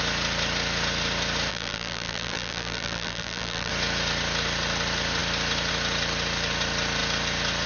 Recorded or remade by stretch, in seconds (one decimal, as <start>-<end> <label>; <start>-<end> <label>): 0.0-1.5 recorded; 1.5-3.7 remade; 3.7-7.7 recorded